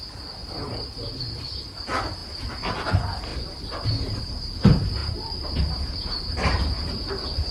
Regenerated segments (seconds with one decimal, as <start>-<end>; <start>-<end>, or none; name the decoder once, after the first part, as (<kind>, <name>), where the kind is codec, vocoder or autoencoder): 3.3-4.2 (vocoder, BigVGAN v2); 5.0-7.1